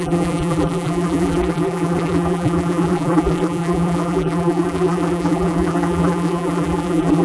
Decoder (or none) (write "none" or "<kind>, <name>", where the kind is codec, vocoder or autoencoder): vocoder, BigVGAN v2